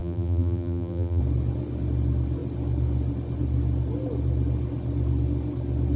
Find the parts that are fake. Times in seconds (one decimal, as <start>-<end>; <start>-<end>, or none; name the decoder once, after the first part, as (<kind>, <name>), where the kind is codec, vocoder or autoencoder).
0.0-1.2 (vocoder, BigVGAN v2)